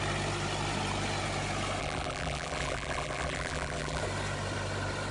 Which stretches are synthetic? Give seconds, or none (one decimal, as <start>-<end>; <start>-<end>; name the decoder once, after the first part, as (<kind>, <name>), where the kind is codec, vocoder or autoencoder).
1.8-4.0 (vocoder, BigVGAN v2)